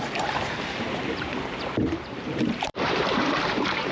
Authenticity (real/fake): fake